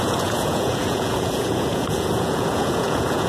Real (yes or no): no